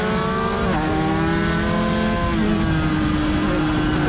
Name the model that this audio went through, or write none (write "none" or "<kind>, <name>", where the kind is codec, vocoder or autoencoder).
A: none